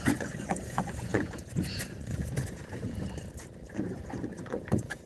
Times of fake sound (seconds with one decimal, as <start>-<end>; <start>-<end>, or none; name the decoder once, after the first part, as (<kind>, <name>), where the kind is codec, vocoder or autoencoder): 0.0-2.6 (vocoder, Vocos); 3.7-5.1